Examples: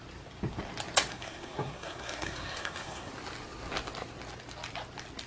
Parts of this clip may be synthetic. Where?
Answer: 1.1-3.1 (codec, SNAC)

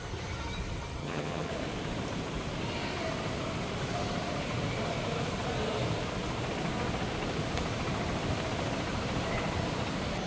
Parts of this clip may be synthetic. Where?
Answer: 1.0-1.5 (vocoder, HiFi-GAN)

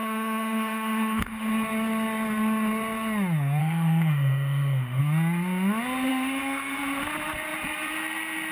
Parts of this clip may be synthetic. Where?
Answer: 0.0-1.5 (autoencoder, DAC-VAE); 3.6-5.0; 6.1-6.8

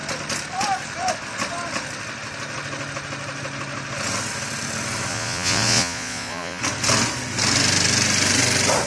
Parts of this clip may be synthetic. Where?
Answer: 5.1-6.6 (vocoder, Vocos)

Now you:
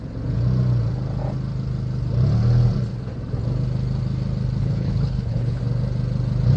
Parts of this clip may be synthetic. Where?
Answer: 4.6-5.6 (codec, HILCodec)